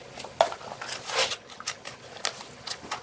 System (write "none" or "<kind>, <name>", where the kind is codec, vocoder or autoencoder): none